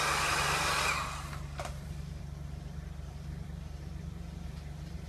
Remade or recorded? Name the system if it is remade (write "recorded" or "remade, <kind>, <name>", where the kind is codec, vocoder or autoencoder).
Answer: remade, vocoder, BigVGAN v2